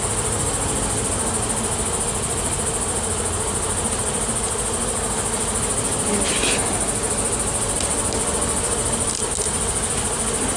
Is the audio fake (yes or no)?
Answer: no